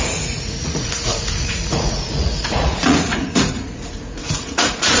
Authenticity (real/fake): fake